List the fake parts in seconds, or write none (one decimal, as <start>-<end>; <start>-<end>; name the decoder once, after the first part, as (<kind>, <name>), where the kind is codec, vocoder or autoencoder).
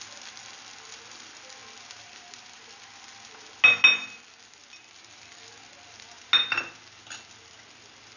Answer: none